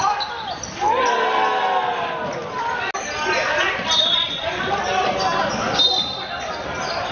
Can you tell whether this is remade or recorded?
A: recorded